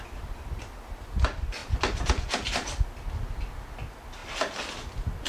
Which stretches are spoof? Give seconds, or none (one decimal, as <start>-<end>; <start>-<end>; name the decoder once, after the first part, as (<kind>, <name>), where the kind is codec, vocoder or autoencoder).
none